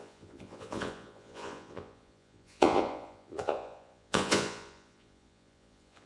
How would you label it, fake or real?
fake